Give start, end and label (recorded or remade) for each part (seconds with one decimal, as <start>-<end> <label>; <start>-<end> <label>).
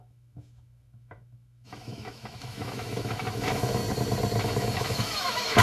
0.0-3.8 remade; 3.8-4.4 recorded; 4.4-5.6 remade